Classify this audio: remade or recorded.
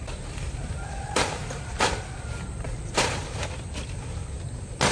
recorded